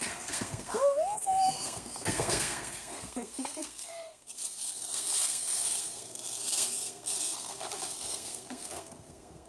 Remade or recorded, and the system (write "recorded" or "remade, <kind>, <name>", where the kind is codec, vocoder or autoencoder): remade, codec, SNAC